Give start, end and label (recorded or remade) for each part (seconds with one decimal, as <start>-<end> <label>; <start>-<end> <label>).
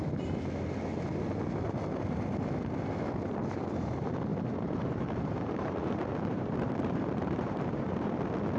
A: 0.0-4.3 recorded; 4.3-8.2 remade; 8.2-8.6 recorded